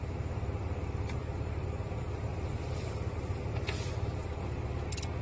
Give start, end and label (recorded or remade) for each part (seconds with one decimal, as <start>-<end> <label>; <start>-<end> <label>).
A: 0.0-1.2 recorded; 1.2-1.9 remade; 1.9-2.3 recorded; 2.3-3.4 remade; 3.4-5.2 recorded

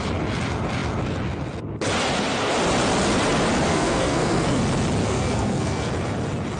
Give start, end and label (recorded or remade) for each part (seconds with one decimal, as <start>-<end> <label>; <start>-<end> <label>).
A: 0.0-3.7 recorded; 3.7-4.6 remade; 4.6-5.0 recorded; 5.0-5.9 remade; 5.9-6.6 recorded

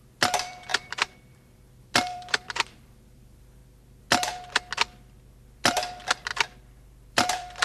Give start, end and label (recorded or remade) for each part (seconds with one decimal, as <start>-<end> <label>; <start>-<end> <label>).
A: 0.0-3.6 remade; 3.6-5.6 recorded; 5.6-6.3 remade; 6.3-7.1 recorded; 7.1-7.6 remade

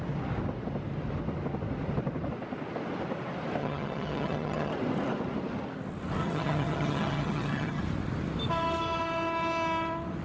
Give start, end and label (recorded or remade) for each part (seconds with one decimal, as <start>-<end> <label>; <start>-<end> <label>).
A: 0.0-3.6 recorded; 3.6-4.7 remade; 4.7-6.2 recorded; 6.2-7.8 remade; 7.8-10.2 recorded

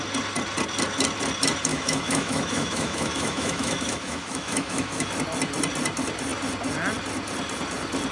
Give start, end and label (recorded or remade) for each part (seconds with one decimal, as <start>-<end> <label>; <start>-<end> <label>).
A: 0.0-1.7 recorded; 1.7-5.1 remade; 5.1-8.1 recorded